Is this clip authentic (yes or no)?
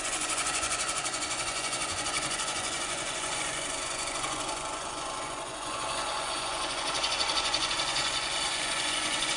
no